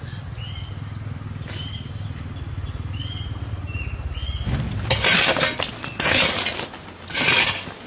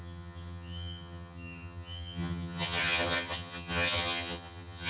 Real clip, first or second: first